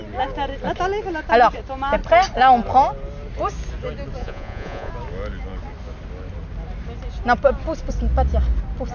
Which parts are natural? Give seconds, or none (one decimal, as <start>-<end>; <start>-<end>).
0.0-4.2; 4.9-8.9